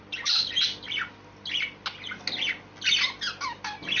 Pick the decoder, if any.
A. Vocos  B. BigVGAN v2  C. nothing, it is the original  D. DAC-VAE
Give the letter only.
C